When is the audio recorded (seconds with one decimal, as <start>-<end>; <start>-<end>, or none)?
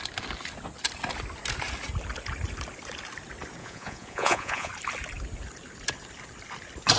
0.0-3.6; 4.7-7.0